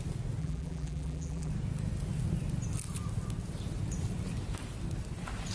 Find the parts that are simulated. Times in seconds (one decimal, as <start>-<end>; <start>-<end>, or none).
0.4-1.5